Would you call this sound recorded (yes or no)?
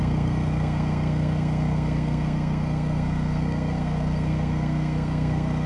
no